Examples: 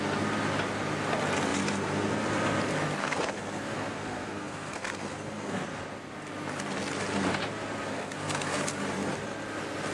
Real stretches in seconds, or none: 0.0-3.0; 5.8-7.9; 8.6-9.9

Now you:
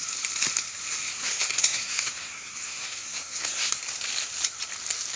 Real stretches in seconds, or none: 0.0-1.1; 3.8-5.2